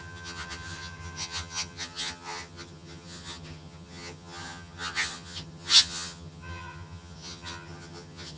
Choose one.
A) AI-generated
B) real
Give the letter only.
A